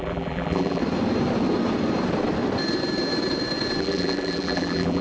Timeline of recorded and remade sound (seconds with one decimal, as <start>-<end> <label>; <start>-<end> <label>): 0.0-0.8 remade; 0.8-3.8 recorded; 3.8-5.0 remade